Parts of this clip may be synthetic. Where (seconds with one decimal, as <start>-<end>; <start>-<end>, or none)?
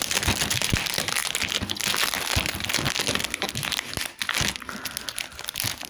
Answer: none